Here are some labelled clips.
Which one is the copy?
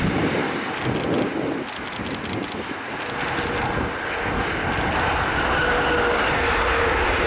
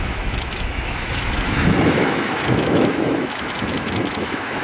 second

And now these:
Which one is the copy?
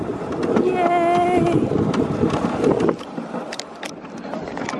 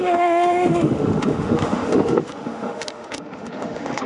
second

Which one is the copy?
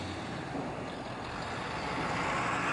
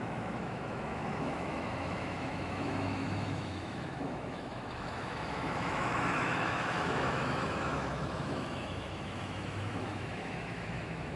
second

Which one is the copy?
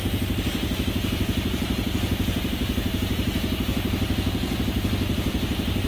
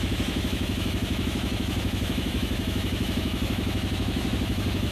second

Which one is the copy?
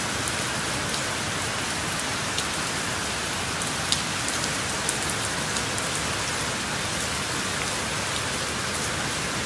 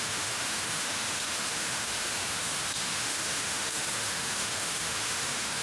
second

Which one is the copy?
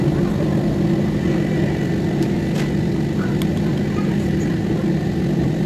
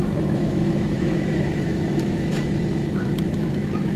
second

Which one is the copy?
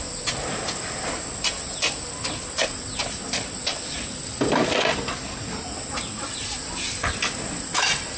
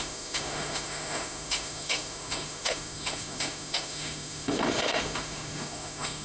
second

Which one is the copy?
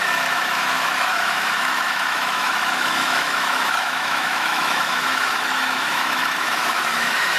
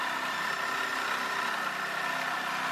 first